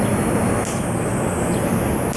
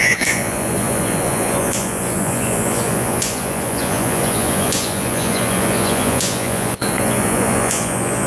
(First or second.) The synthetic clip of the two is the second